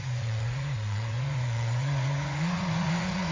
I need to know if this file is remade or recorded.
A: remade